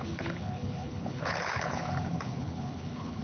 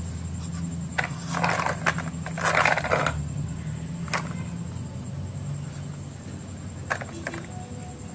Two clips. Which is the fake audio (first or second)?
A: first